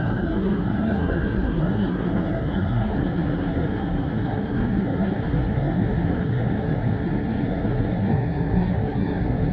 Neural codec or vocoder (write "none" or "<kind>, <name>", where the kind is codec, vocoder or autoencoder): codec, SNAC